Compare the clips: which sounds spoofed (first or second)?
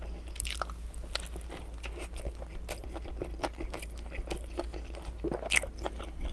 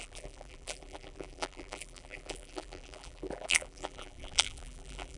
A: second